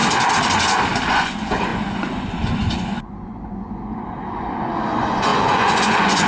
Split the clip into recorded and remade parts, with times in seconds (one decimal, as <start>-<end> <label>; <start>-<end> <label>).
0.0-1.1 recorded; 1.1-6.3 remade